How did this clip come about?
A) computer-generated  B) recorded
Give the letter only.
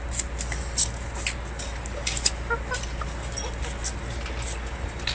B